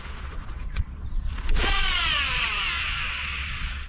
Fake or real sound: fake